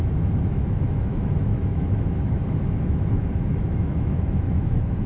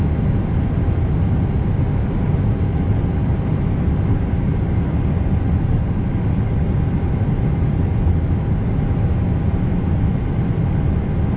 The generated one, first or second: first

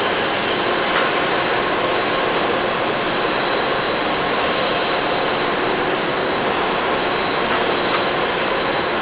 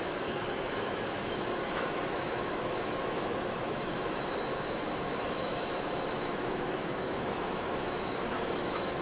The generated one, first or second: second